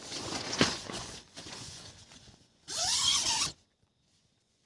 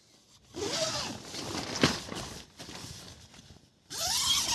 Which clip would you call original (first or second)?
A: second